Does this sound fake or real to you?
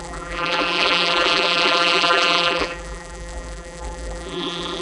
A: fake